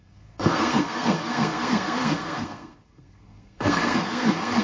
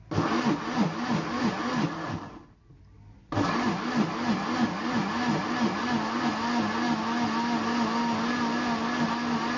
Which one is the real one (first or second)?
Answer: second